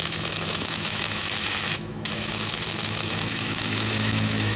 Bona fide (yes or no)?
no